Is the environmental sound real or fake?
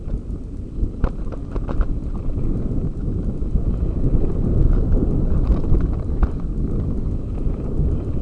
real